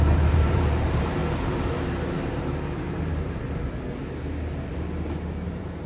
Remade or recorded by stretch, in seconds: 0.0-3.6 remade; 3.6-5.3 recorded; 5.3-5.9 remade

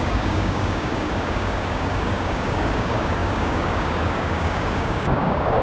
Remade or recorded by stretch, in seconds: 0.0-5.6 remade

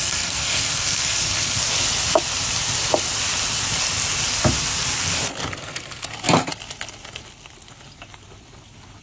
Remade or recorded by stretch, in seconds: 0.0-1.6 remade; 1.6-5.6 recorded; 5.6-6.1 remade; 6.1-9.0 recorded

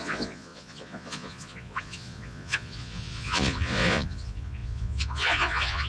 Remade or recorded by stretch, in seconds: 0.0-5.9 remade